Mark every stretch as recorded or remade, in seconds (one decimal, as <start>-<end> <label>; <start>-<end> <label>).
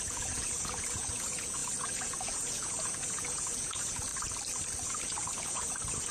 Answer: 0.0-4.1 remade; 4.1-4.8 recorded; 4.8-6.1 remade